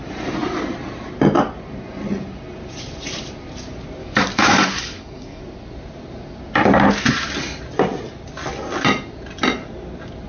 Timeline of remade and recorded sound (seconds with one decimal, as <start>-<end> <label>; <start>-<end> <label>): 0.0-4.0 recorded; 4.0-5.4 remade; 5.4-10.3 recorded